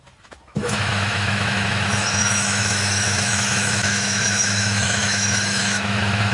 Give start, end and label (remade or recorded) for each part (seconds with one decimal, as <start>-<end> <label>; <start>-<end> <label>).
0.0-6.3 remade